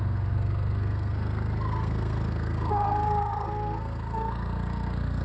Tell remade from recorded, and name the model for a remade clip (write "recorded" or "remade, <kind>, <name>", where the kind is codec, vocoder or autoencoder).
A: remade, codec, SNAC